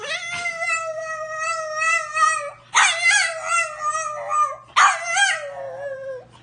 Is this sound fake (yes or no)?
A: no